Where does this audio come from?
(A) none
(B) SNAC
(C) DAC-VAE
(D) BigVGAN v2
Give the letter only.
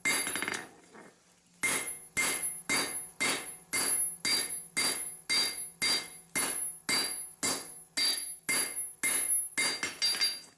A